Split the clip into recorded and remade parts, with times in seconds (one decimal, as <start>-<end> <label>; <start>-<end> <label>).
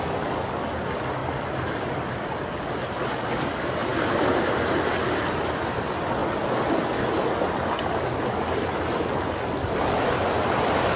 0.0-3.9 recorded; 3.9-4.5 remade; 4.5-11.0 recorded